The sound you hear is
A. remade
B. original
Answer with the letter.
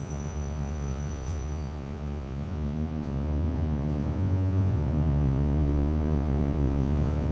A